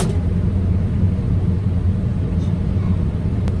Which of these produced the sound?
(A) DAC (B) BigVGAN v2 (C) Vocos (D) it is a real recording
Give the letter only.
D